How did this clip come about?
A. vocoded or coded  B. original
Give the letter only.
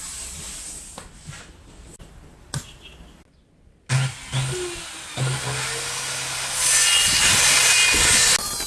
B